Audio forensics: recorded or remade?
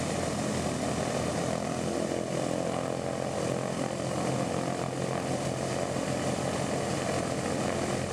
recorded